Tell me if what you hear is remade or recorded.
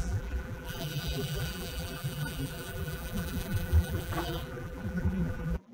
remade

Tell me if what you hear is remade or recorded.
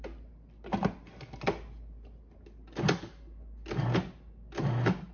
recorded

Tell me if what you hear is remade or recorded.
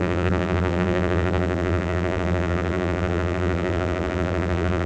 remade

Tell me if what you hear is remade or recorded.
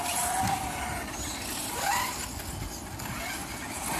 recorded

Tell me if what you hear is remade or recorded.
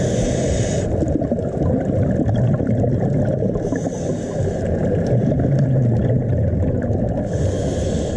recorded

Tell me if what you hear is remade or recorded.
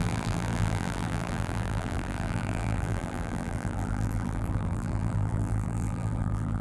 remade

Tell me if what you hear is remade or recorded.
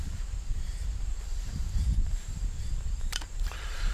remade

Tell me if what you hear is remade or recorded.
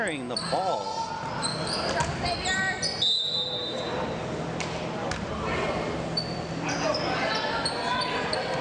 recorded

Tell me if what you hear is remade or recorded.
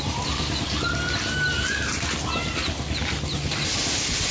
recorded